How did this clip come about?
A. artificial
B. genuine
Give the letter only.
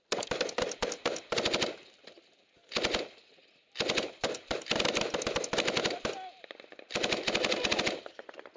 B